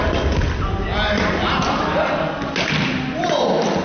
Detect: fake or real real